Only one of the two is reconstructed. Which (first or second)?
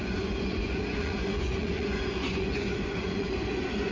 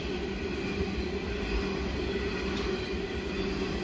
first